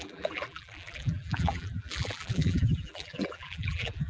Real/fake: fake